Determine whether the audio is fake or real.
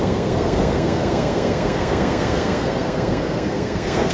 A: fake